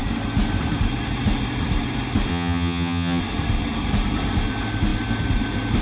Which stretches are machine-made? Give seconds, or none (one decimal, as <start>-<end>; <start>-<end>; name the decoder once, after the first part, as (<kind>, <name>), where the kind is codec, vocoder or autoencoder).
2.3-3.2 (vocoder, HiFi-GAN)